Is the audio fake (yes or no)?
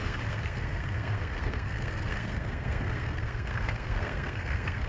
yes